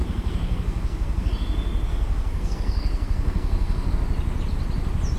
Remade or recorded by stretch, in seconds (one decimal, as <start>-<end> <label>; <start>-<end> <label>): 0.0-1.3 remade; 1.3-1.9 recorded; 1.9-3.9 remade; 3.9-5.2 recorded